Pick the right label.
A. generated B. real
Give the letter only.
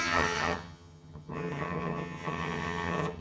A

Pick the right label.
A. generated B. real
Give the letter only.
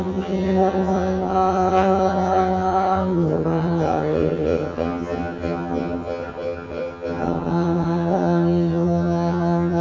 A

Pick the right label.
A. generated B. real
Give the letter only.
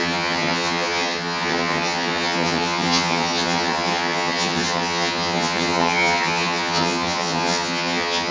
A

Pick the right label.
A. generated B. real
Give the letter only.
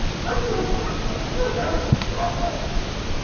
B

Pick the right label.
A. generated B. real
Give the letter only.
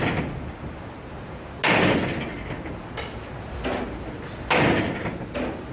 B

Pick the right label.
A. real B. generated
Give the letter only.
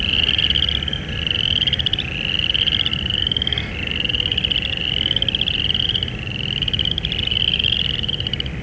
A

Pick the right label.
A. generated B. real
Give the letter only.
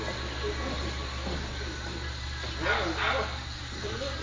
B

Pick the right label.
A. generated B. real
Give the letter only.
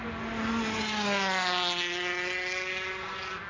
B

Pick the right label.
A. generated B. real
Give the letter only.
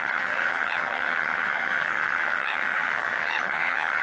A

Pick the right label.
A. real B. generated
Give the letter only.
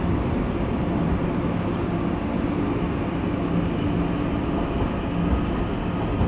A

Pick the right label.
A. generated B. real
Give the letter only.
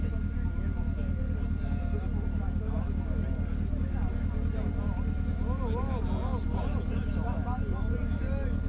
B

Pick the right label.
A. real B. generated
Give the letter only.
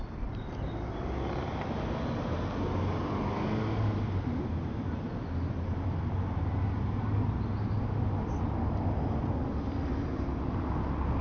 A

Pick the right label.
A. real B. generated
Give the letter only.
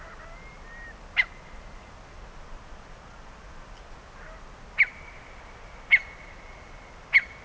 A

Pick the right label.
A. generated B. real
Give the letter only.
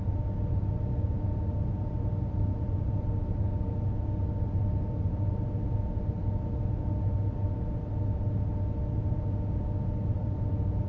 B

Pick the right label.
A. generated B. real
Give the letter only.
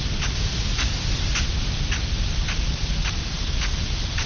B